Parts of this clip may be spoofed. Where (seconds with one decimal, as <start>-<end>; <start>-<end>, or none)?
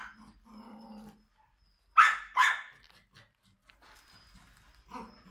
none